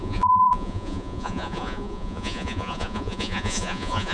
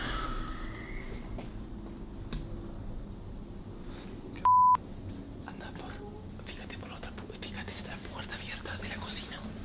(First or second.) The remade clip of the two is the first